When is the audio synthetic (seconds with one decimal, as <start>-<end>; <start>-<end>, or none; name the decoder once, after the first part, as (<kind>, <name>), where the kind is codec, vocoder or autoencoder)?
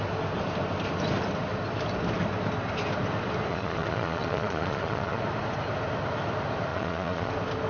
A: 3.5-5.2 (vocoder, Vocos); 6.7-7.3